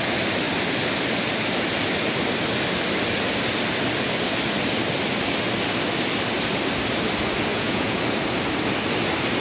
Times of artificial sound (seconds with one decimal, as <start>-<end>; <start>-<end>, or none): 7.5-8.0